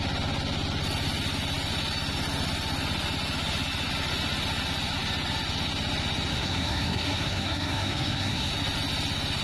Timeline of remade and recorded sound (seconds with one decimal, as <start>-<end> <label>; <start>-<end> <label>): 0.0-6.3 recorded; 6.3-8.5 remade; 8.5-9.4 recorded